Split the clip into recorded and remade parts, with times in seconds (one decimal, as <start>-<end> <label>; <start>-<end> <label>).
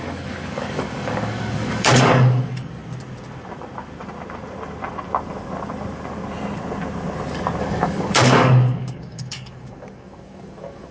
0.0-2.8 remade; 2.8-7.6 recorded; 7.6-10.9 remade